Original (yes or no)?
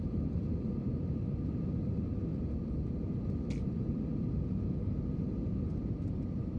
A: yes